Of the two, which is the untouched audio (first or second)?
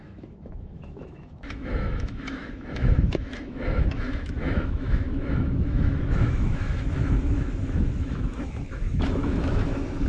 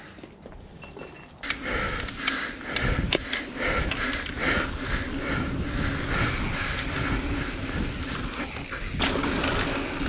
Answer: second